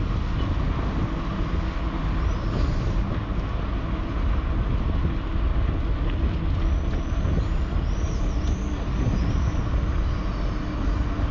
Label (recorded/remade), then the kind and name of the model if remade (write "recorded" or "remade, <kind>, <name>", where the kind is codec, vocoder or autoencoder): recorded